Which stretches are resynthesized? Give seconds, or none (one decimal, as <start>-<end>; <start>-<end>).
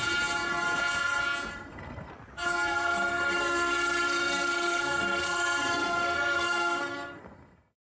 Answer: 1.5-2.1; 2.7-7.8